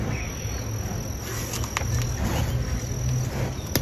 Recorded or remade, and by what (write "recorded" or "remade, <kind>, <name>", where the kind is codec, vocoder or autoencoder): recorded